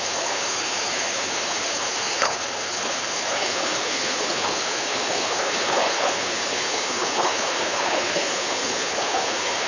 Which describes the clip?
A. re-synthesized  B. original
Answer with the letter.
A